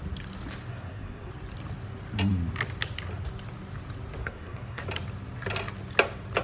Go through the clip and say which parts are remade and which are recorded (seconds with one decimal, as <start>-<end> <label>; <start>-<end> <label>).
0.0-0.7 recorded; 0.7-1.3 remade; 1.3-4.2 recorded; 4.2-4.8 remade; 4.8-6.4 recorded